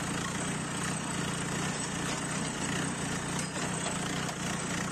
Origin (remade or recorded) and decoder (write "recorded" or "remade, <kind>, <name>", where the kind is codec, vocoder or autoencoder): recorded